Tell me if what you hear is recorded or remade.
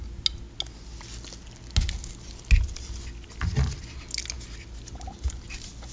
recorded